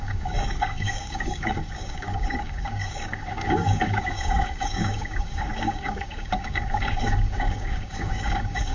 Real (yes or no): no